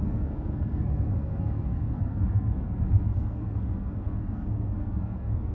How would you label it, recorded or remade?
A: remade